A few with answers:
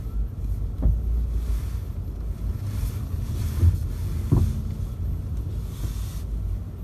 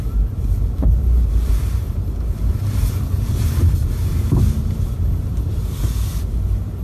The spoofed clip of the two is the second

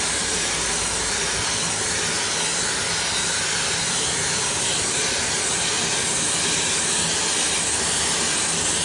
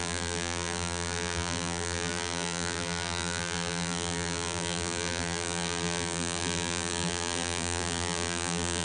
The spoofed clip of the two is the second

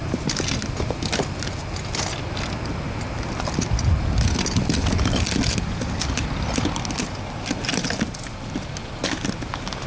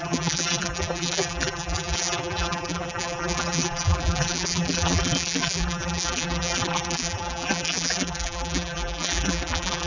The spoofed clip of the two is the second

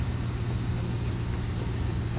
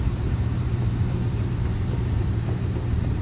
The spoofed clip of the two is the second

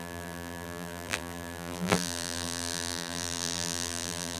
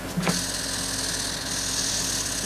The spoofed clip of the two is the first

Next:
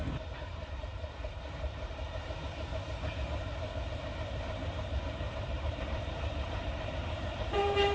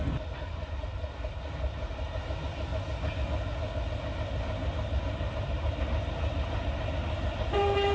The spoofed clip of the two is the first